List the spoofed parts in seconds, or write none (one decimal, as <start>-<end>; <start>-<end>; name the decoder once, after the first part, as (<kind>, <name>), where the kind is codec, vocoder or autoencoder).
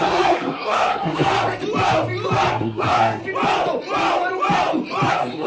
0.0-1.3 (codec, SNAC); 2.5-3.2; 5.1-5.5